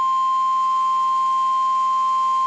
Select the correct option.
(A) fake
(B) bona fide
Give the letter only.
B